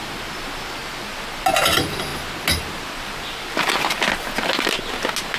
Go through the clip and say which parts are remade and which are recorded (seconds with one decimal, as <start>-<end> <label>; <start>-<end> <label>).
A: 0.0-5.4 recorded